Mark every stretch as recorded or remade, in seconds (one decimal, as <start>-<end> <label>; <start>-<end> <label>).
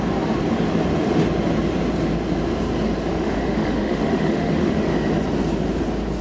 0.0-3.1 recorded; 3.1-4.9 remade; 4.9-6.2 recorded